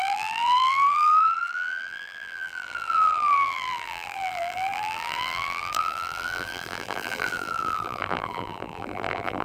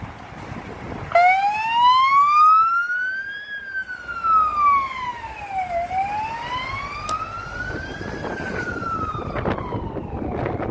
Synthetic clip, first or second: first